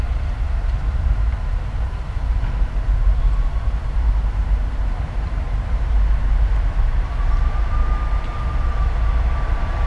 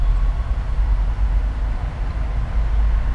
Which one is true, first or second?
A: second